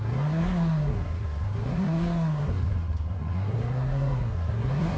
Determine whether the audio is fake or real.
fake